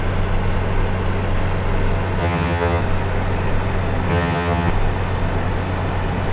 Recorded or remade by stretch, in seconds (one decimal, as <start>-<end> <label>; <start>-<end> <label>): 0.0-2.2 recorded; 2.2-2.8 remade; 2.8-4.1 recorded; 4.1-4.7 remade; 4.7-6.3 recorded